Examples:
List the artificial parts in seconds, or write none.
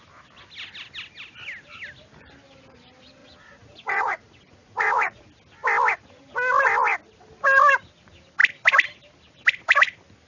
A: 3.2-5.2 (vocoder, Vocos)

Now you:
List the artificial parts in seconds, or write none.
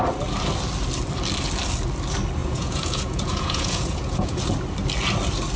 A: 2.4-4.4 (vocoder, Vocos)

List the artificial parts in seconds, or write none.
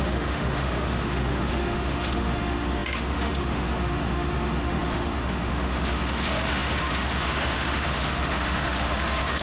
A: 0.0-9.4 (autoencoder, DAC-VAE)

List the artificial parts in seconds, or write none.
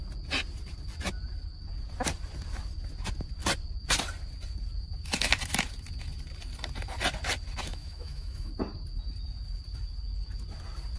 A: 7.7-8.5 (autoencoder, DAC-VAE)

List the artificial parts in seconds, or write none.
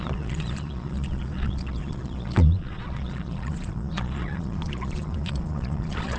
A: 0.0-6.2 (vocoder, Vocos)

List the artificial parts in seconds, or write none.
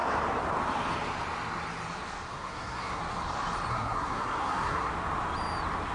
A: 2.3-3.0 (codec, SNAC); 3.7-4.9